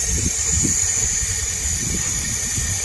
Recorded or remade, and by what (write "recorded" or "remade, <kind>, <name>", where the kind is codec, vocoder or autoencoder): recorded